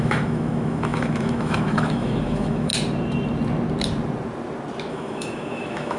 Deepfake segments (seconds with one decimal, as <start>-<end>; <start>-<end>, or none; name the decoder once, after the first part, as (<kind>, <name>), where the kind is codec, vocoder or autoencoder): 0.0-2.7 (autoencoder, DAC-VAE); 4.9-6.0